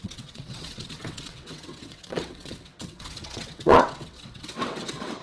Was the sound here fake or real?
fake